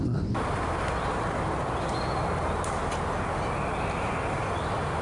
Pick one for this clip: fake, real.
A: real